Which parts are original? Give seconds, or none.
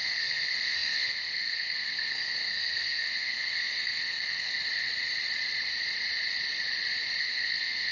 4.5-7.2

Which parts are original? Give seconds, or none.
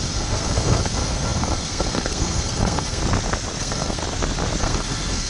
3.0-3.6; 4.0-4.6